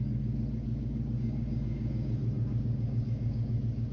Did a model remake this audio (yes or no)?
yes